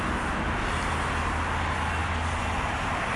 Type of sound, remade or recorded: recorded